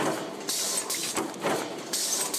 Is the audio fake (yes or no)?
no